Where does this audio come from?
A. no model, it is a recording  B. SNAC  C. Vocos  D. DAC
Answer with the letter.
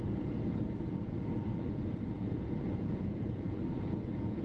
C